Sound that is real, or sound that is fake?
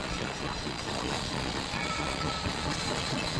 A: fake